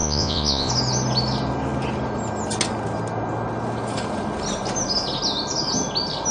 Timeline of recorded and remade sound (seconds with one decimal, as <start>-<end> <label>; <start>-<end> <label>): 0.0-0.7 remade; 0.7-6.3 recorded